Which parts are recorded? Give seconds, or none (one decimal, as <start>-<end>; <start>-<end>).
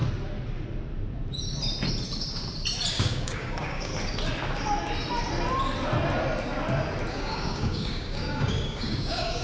0.0-2.9; 3.9-7.1